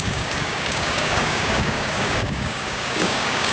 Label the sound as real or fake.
fake